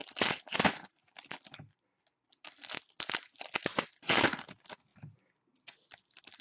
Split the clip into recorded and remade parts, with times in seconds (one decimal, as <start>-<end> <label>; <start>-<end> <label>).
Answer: 0.0-6.4 recorded

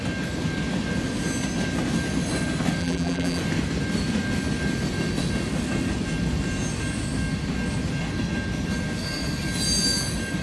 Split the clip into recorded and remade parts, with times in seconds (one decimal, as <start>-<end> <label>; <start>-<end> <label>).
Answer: 0.0-2.8 recorded; 2.8-3.4 remade; 3.4-10.4 recorded

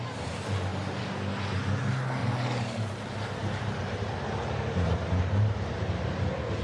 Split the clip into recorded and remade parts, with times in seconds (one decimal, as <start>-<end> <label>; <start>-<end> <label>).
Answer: 0.0-2.2 recorded; 2.2-3.0 remade; 3.0-3.4 recorded; 3.4-5.9 remade; 5.9-6.6 recorded